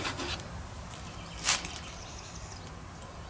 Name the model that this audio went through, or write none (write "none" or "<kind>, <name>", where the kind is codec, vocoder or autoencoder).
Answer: none